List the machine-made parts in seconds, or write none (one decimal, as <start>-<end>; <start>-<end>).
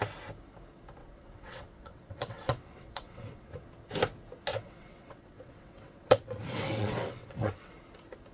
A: 1.0-3.5; 4.5-7.7